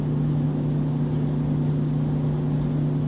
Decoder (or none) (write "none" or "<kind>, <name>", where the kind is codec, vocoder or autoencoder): none